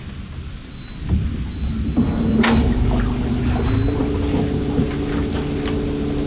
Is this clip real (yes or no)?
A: yes